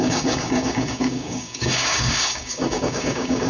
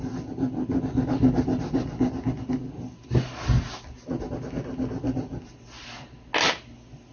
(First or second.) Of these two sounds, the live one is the second